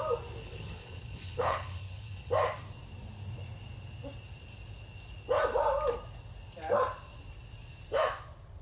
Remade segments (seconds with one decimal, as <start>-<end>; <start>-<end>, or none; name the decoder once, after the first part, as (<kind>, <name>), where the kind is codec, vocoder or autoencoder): 0.4-2.3 (codec, HILCodec)